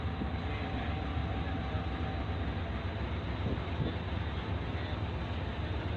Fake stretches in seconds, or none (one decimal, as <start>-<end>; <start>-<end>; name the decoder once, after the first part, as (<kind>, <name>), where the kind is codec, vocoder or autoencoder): none

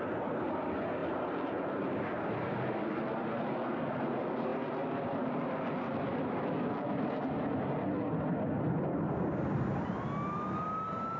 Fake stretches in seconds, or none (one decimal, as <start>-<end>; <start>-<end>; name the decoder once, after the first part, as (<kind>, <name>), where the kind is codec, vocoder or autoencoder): 4.5-7.3 (vocoder, BigVGAN v2)

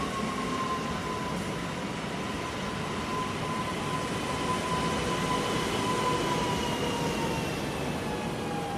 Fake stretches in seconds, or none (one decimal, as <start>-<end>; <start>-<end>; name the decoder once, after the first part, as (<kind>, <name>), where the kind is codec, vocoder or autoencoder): none

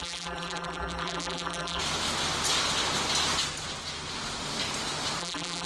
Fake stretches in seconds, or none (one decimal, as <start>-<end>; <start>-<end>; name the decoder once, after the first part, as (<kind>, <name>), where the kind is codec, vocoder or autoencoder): 0.0-1.8 (vocoder, BigVGAN v2); 5.2-5.7